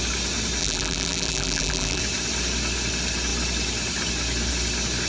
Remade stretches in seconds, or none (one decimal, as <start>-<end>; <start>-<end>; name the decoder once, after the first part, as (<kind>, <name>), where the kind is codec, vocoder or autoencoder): 0.6-2.0 (vocoder, BigVGAN v2)

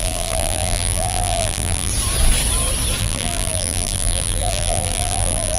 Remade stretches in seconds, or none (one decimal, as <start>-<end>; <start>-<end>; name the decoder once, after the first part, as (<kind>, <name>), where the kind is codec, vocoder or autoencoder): 0.0-1.9 (vocoder, BigVGAN v2); 3.0-5.6

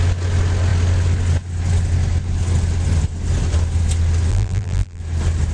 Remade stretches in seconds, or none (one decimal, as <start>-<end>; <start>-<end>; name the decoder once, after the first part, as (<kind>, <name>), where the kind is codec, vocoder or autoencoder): 4.3-5.0 (vocoder, BigVGAN v2)

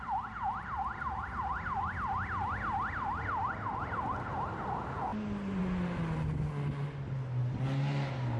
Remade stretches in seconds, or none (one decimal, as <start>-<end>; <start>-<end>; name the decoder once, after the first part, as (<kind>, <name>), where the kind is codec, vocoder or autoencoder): none

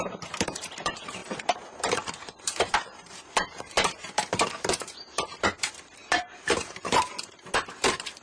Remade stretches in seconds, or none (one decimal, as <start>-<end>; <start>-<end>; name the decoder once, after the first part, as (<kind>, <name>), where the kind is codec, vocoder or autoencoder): 0.0-8.2 (vocoder, BigVGAN v2)

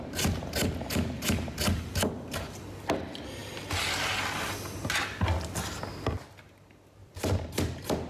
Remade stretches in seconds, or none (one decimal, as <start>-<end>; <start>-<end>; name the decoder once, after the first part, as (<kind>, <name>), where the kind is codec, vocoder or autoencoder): 0.6-1.2 (vocoder, BigVGAN v2); 7.0-8.1

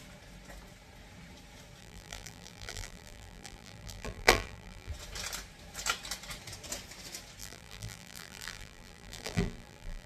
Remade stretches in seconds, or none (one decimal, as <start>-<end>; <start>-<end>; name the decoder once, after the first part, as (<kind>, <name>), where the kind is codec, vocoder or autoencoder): 1.8-4.9 (vocoder, BigVGAN v2); 7.4-10.1